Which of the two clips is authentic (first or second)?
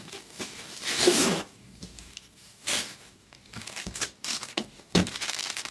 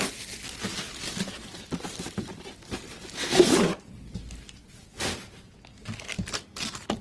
second